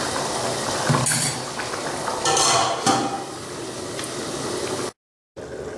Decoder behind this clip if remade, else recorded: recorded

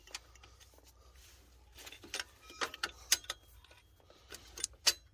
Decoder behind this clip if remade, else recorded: recorded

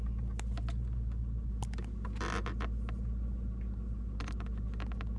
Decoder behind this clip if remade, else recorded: recorded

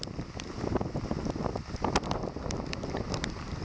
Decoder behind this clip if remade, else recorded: recorded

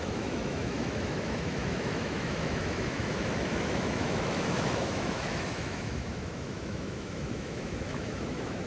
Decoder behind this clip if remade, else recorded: remade, autoencoder, DAC-VAE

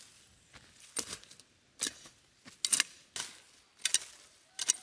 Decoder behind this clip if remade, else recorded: recorded